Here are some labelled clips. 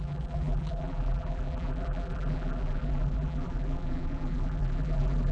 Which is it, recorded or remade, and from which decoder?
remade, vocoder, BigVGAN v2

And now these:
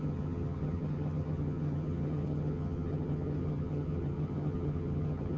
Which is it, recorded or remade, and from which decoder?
remade, vocoder, HiFi-GAN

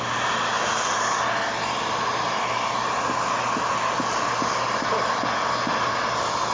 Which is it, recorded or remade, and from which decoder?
recorded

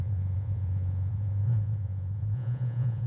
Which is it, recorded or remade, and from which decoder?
remade, vocoder, Vocos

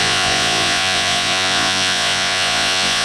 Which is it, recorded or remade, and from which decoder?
remade, vocoder, Vocos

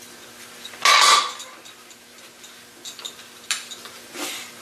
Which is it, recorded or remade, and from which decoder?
recorded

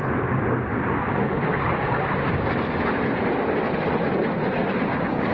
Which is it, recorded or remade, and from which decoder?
recorded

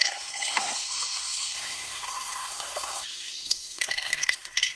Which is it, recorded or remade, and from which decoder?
remade, codec, SNAC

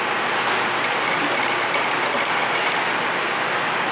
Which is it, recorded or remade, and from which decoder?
recorded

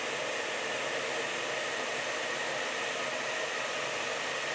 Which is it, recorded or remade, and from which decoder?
recorded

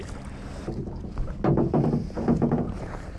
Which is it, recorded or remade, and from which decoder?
recorded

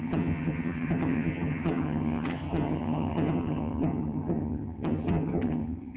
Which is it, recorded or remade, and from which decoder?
remade, vocoder, HiFi-GAN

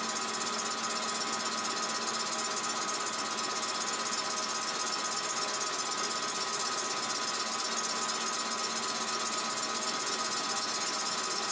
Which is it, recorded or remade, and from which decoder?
recorded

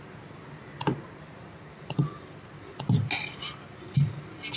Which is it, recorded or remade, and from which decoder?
recorded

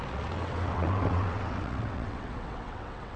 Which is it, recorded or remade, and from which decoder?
remade, vocoder, WaveNeXt